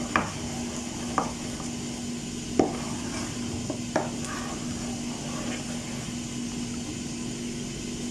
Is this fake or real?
real